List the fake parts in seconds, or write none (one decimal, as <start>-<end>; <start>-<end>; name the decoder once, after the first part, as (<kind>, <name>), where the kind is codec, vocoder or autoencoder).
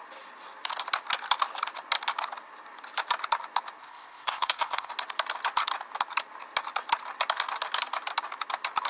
3.8-4.9 (codec, ZipCodec)